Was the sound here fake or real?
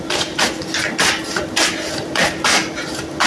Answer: real